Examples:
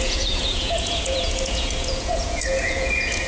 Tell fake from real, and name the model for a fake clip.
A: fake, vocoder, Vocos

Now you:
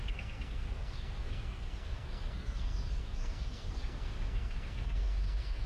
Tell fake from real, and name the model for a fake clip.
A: fake, codec, SNAC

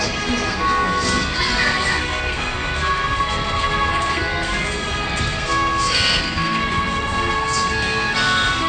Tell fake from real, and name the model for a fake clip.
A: fake, codec, SNAC